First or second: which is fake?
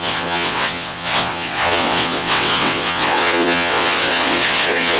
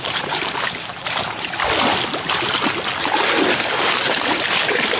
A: first